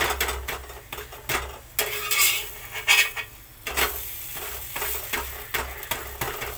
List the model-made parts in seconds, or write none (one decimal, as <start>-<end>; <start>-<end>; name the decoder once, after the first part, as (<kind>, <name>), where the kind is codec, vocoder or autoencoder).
none